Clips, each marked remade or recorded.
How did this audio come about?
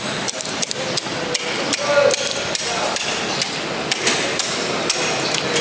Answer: recorded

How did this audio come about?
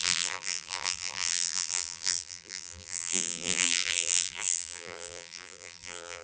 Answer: remade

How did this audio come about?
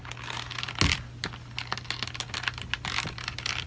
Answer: recorded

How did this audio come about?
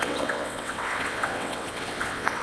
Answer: remade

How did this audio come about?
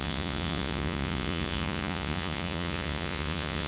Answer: remade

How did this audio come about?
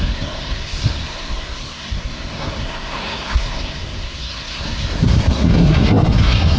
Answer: remade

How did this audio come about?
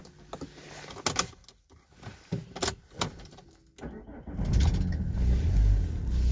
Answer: recorded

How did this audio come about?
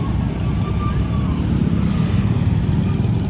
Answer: recorded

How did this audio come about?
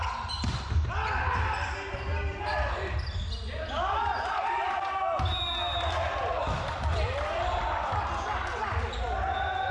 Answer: recorded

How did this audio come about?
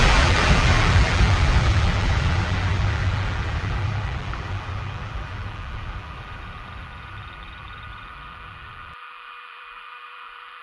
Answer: remade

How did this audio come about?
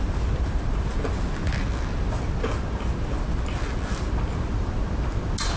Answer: recorded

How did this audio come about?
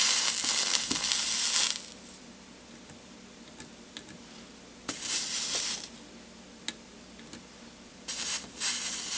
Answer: recorded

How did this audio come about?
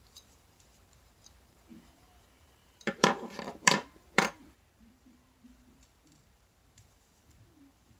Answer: remade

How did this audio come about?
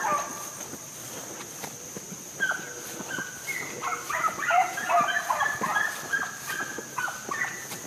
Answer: recorded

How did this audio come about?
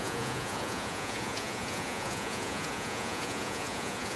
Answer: remade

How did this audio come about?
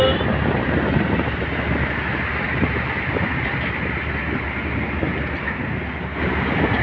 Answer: recorded